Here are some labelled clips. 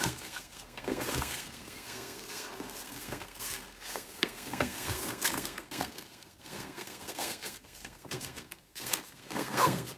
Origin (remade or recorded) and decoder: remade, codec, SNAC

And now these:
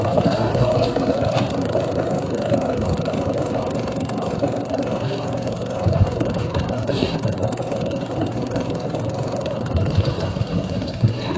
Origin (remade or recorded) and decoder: remade, codec, SNAC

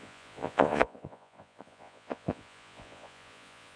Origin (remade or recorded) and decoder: remade, vocoder, Vocos